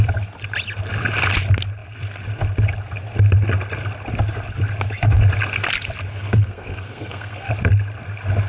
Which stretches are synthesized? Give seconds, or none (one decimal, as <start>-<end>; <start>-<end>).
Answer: 6.1-7.5